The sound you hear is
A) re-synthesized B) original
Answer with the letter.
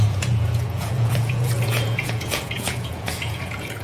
A